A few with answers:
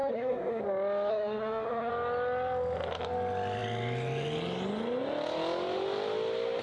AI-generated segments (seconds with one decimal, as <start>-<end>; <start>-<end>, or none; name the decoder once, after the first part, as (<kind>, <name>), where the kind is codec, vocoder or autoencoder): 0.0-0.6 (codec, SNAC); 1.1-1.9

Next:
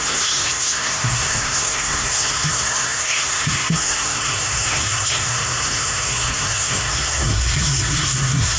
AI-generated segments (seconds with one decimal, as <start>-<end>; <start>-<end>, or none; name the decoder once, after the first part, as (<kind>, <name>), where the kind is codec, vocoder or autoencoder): 0.0-8.6 (codec, SNAC)

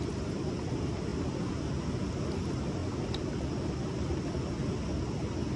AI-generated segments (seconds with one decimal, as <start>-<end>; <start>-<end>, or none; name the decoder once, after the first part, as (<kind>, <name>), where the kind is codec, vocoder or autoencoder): none

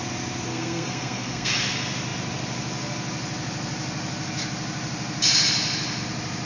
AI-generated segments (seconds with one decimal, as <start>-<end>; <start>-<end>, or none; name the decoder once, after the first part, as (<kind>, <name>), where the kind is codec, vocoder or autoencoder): 0.5-1.5 (codec, SNAC)

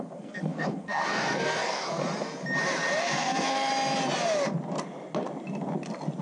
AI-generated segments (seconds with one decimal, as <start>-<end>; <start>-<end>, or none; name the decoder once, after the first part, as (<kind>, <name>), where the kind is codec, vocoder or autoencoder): 0.0-2.0 (codec, SNAC); 3.0-3.7

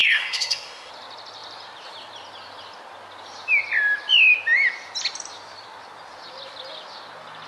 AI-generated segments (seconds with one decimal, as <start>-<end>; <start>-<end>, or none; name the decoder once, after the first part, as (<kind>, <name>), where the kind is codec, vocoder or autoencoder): 0.0-0.9 (codec, SNAC)

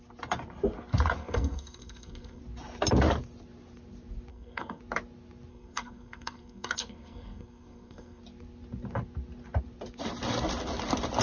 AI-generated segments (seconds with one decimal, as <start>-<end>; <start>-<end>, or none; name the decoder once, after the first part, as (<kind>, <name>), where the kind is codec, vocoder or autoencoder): 1.2-2.4 (codec, SNAC); 4.3-4.8; 5.5-8.2

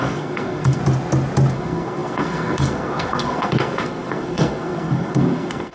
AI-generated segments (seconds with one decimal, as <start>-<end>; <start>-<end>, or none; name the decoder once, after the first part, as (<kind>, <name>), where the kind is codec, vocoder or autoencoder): 0.0-0.8 (codec, SNAC); 1.5-5.7